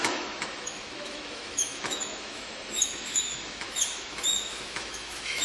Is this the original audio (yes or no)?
no